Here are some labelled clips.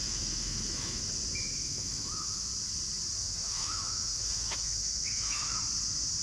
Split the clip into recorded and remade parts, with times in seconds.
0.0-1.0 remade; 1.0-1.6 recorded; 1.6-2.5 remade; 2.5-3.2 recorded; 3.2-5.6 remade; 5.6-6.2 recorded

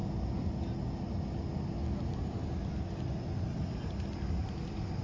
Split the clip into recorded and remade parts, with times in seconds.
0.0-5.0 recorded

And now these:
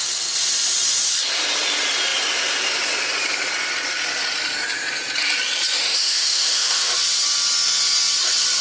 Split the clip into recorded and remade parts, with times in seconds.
0.0-5.8 recorded; 5.8-6.9 remade; 6.9-8.6 recorded

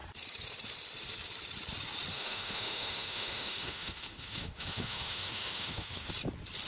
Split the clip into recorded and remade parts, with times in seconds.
0.0-2.1 recorded; 2.1-6.1 remade; 6.1-6.7 recorded

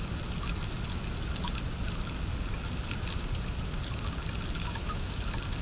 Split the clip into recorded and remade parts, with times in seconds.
0.0-4.6 recorded; 4.6-5.1 remade; 5.1-5.6 recorded

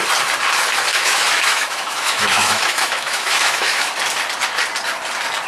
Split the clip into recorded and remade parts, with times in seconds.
0.0-0.9 recorded; 0.9-3.9 remade; 3.9-5.5 recorded